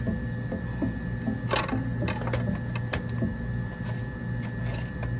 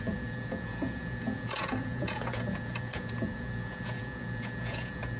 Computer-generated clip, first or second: second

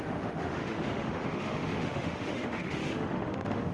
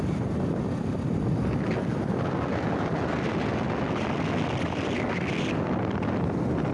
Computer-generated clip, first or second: first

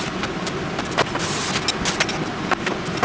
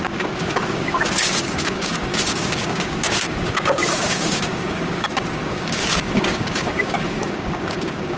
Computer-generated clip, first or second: second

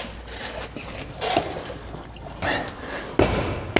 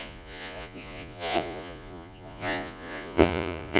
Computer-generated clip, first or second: second